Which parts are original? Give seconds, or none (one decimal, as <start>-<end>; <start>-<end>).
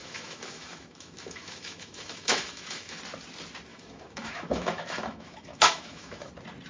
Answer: 3.0-3.7; 6.3-6.7